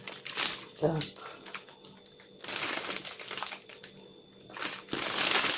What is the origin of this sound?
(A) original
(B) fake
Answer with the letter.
A